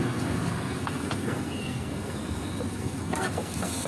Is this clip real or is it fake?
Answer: fake